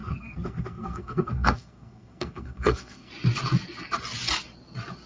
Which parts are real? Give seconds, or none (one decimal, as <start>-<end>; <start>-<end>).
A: 3.1-5.1